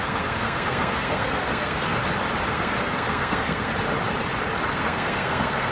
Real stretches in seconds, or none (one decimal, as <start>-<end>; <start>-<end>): 2.0-2.5; 3.7-4.7